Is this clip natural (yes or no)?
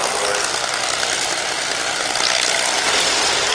no